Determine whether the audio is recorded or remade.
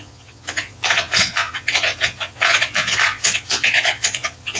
remade